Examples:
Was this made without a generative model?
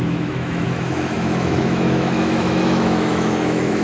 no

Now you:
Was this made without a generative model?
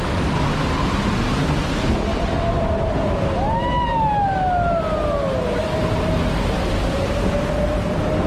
yes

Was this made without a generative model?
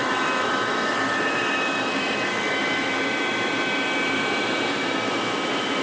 no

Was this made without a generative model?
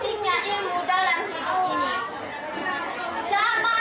yes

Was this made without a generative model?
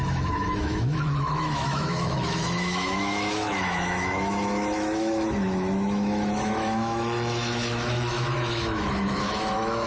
no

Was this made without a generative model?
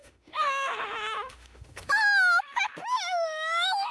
no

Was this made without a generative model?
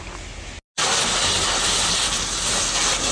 yes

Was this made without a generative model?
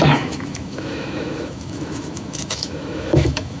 no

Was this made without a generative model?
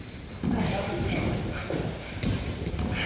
yes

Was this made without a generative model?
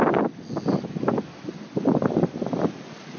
yes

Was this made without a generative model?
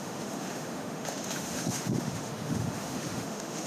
no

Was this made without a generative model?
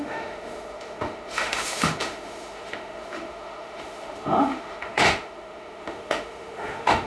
no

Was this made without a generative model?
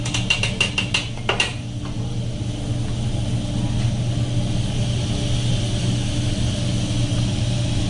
yes